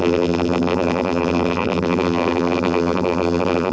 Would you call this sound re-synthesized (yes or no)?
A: yes